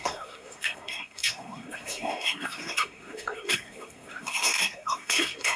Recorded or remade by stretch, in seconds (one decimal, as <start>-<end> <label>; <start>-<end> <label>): 0.0-5.6 remade